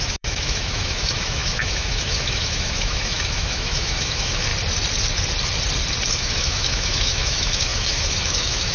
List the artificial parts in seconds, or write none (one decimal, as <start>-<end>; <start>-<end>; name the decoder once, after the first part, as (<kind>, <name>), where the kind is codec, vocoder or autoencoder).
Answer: 0.0-4.5 (autoencoder, DAC-VAE); 6.1-8.7